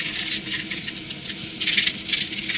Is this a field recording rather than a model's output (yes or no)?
yes